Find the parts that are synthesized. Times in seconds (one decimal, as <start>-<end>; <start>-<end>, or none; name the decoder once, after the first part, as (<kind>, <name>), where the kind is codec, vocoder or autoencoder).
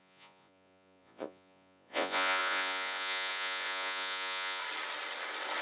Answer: 0.0-4.6 (vocoder, Vocos)